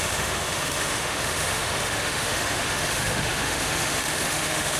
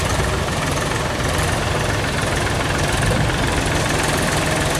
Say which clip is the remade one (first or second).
first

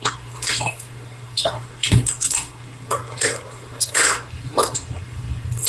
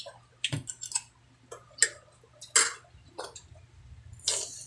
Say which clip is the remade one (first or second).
first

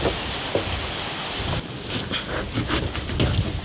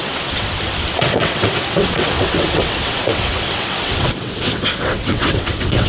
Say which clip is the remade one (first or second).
second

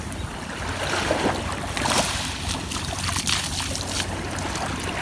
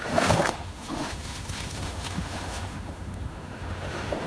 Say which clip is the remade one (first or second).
second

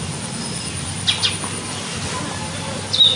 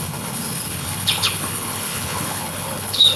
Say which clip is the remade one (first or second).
second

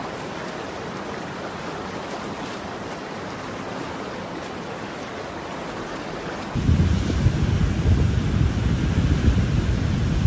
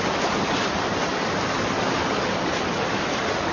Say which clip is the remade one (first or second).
second